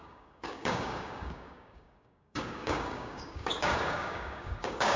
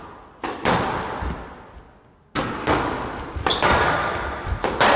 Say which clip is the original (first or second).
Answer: second